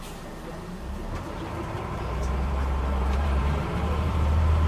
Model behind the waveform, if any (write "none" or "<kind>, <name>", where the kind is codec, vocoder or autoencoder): vocoder, BigVGAN v2